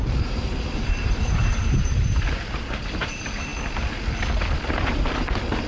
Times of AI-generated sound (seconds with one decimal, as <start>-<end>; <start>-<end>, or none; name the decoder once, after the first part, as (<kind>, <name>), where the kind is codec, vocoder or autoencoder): 0.0-3.5 (vocoder, BigVGAN v2)